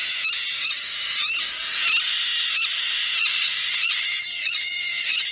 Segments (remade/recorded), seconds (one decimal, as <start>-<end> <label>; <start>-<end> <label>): 0.0-3.2 recorded; 3.2-5.3 remade